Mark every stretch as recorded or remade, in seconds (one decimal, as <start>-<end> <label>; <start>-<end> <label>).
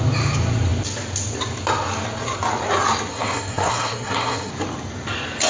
0.0-3.1 recorded; 3.1-4.5 remade; 4.5-5.5 recorded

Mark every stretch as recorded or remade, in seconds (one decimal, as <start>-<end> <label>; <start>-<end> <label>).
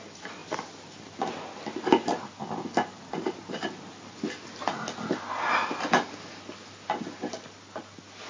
0.0-8.3 recorded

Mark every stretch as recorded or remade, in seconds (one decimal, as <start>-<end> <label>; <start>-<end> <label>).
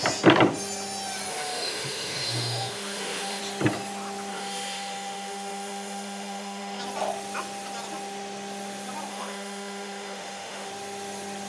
0.0-1.3 recorded; 1.3-3.4 remade; 3.4-4.3 recorded; 4.3-6.8 remade; 6.8-9.1 recorded; 9.1-10.7 remade; 10.7-11.5 recorded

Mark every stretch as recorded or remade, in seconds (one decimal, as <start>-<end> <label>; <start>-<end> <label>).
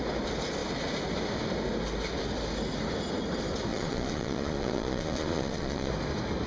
0.0-3.7 recorded; 3.7-5.9 remade; 5.9-6.5 recorded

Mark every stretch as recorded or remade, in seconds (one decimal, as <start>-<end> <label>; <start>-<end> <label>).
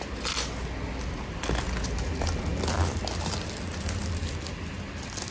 0.0-5.3 recorded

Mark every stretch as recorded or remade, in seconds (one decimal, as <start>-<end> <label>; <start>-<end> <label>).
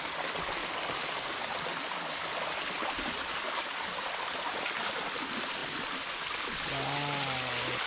0.0-7.9 recorded